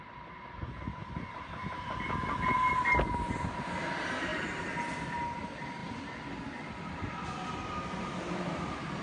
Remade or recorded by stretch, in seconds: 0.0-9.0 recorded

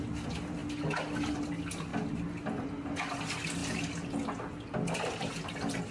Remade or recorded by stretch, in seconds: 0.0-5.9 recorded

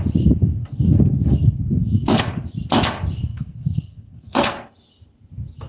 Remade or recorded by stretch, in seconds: 0.0-0.6 recorded; 0.6-2.2 remade; 2.2-3.3 recorded; 3.3-4.7 remade; 4.7-5.7 recorded

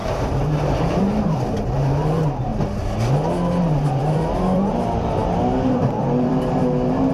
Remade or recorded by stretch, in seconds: 0.0-2.5 remade; 2.5-3.6 recorded; 3.6-7.1 remade

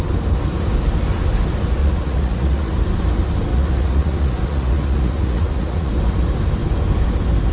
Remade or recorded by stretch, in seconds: 0.0-1.8 recorded; 1.8-2.7 remade; 2.7-3.5 recorded; 3.5-5.9 remade; 5.9-7.5 recorded